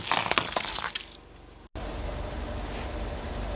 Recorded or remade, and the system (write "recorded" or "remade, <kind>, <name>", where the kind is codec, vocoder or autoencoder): recorded